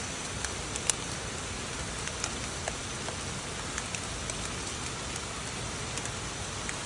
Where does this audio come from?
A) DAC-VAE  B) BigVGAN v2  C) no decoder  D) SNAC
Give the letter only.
C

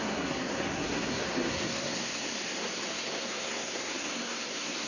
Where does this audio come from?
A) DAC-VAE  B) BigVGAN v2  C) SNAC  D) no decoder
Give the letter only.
C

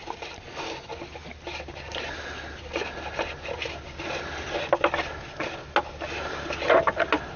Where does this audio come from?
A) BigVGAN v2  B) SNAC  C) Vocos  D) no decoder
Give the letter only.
D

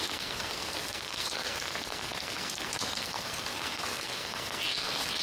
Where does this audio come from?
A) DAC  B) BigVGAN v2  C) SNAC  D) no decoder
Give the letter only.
C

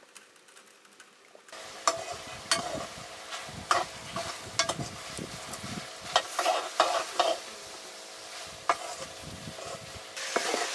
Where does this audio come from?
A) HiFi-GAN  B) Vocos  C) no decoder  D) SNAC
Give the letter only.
C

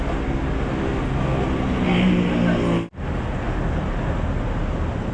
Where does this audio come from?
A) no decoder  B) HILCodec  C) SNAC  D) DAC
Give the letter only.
A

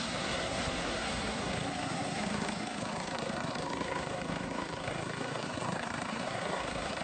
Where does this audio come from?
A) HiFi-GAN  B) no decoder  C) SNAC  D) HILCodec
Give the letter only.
C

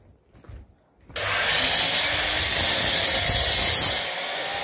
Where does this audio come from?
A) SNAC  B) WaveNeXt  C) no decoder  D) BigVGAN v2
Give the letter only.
C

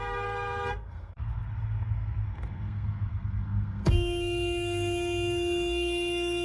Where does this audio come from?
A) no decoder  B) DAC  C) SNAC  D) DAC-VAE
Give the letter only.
C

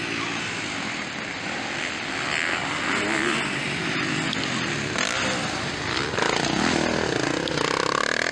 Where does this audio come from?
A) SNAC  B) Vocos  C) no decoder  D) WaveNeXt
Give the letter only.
C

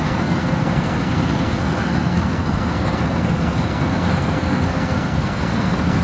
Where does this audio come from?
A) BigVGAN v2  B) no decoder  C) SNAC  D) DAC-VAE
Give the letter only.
C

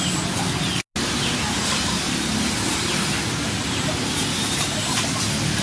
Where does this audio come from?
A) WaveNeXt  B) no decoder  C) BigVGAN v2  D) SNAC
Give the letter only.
B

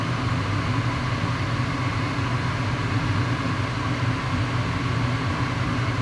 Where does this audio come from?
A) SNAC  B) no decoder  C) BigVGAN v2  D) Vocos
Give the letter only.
B